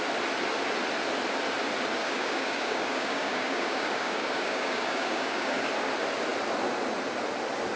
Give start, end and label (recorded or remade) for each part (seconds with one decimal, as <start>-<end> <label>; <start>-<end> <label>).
0.0-2.0 recorded; 2.0-5.7 remade; 5.7-7.8 recorded